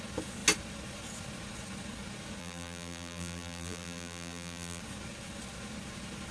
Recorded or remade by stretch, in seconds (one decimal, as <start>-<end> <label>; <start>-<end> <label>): 0.0-2.4 recorded; 2.4-4.8 remade; 4.8-6.3 recorded